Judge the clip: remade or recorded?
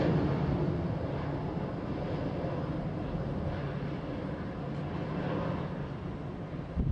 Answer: recorded